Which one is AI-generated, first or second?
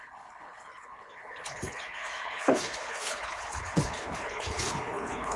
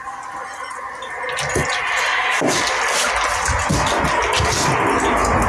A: first